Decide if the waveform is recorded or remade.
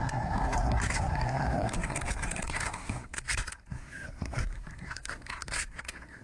remade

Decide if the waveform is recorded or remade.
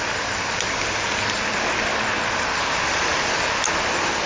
recorded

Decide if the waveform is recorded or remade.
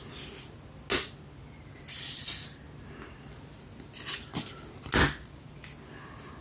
recorded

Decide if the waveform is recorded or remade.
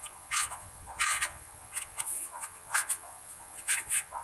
remade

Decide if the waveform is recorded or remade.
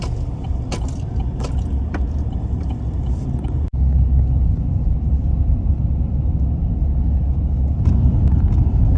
recorded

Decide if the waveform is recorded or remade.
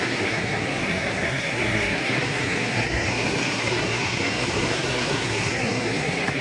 remade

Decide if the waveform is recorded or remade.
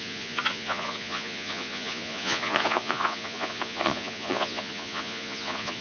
remade